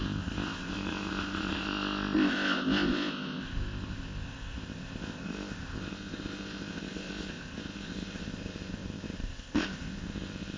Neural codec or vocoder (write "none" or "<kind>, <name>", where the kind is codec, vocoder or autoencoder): codec, ZipCodec